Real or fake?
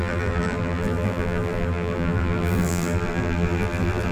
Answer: fake